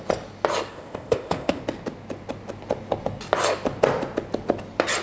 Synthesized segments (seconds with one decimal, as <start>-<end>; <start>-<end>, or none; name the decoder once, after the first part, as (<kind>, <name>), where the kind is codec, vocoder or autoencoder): 0.7-1.6 (codec, ZipCodec)